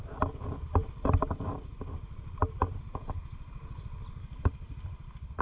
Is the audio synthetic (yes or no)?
no